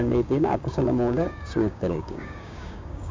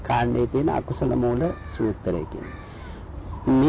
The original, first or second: second